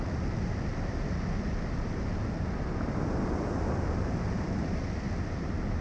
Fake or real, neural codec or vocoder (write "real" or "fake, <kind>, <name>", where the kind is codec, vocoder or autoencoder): real